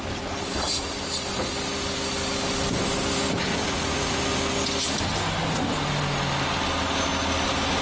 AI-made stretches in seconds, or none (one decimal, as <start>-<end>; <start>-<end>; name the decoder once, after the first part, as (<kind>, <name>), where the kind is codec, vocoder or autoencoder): 3.5-4.2 (vocoder, Vocos)